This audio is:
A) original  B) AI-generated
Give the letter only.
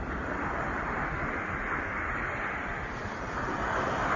A